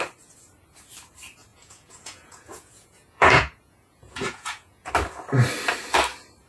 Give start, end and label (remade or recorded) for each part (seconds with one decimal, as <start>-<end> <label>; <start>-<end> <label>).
0.0-1.5 recorded; 1.5-4.9 remade; 4.9-6.5 recorded